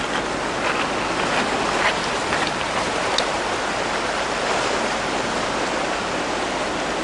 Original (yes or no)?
yes